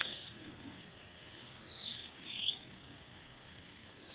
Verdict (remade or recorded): remade